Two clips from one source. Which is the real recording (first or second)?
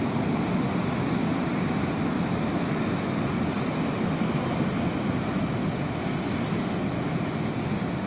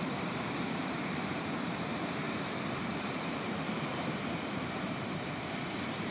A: first